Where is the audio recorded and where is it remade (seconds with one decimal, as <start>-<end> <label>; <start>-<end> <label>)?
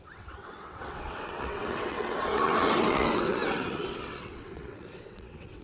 0.0-5.6 remade